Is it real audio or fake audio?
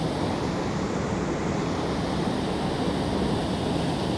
real